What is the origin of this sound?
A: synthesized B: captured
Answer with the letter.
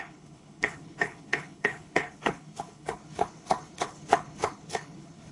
A